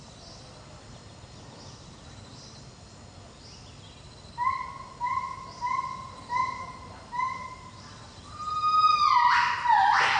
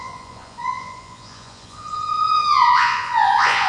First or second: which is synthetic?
second